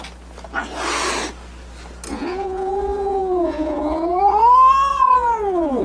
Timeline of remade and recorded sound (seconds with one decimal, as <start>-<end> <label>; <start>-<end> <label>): 0.0-2.1 recorded; 2.1-4.2 remade; 4.2-4.9 recorded; 4.9-5.8 remade